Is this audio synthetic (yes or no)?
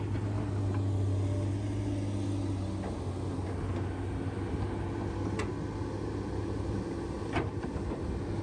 no